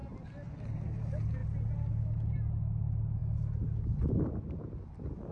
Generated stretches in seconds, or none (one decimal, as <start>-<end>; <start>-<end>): none